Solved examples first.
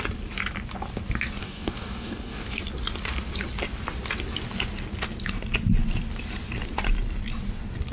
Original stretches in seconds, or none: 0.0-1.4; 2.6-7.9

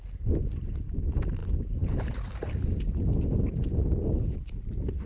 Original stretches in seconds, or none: 0.0-5.1

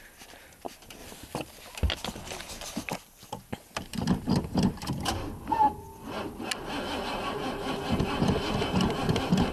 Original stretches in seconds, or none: 0.0-9.5

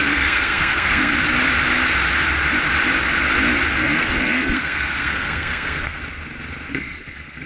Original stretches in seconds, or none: 1.1-3.8; 6.0-6.7

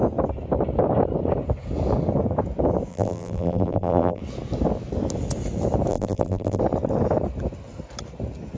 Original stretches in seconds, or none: 0.0-2.9; 4.2-5.9; 6.6-8.6

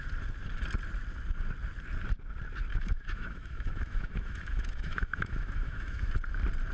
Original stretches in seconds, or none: 0.0-2.7; 6.1-6.7